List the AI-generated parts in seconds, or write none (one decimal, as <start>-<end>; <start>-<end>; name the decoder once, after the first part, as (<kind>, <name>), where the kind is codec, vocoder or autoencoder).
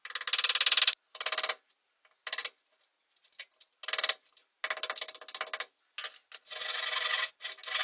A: none